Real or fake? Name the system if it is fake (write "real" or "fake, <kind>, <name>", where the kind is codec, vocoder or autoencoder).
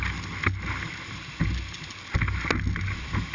real